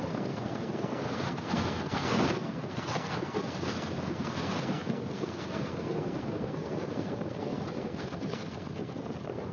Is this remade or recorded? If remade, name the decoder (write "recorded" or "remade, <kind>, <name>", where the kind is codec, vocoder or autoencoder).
remade, codec, SNAC